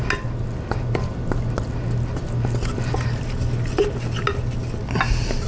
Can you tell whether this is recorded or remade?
recorded